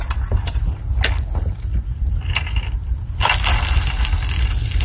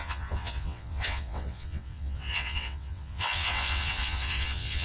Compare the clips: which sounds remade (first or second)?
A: second